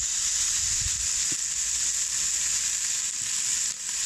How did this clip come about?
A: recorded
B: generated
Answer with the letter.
A